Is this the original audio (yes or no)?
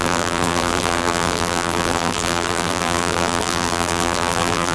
no